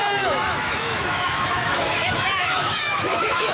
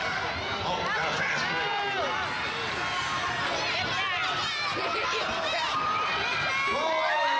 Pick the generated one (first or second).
first